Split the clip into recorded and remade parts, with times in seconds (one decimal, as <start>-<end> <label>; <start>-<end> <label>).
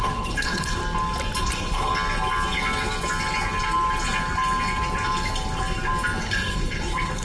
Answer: 0.0-0.8 remade; 0.8-1.4 recorded; 1.4-1.9 remade; 1.9-6.2 recorded; 6.2-7.2 remade